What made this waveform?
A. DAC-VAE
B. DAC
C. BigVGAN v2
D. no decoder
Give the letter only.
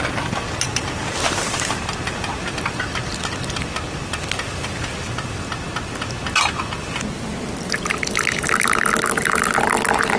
D